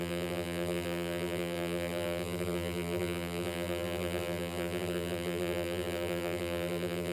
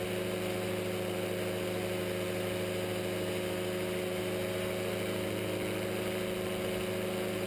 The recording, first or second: second